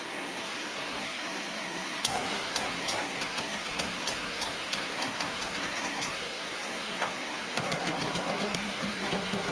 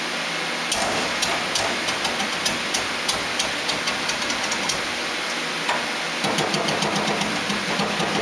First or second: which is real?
second